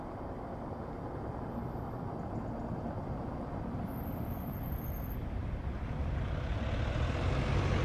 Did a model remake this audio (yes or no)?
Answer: no